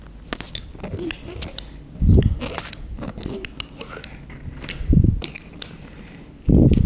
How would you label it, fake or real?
real